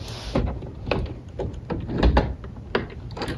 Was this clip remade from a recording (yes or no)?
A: no